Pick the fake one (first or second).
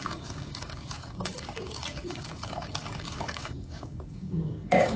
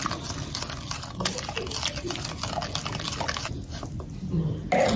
first